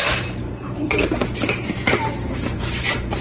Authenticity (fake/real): fake